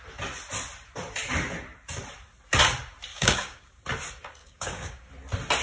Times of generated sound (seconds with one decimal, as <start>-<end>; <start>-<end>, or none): 3.1-3.8; 4.4-5.1